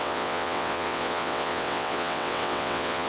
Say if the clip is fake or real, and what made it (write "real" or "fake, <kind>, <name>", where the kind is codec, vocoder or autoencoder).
fake, vocoder, WaveNeXt